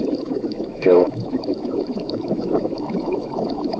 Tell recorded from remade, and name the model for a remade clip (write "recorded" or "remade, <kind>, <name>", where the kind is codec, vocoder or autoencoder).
remade, autoencoder, DAC-VAE